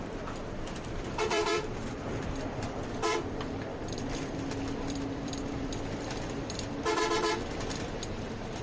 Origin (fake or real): fake